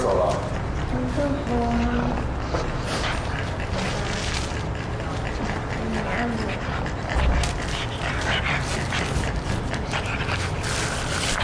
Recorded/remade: recorded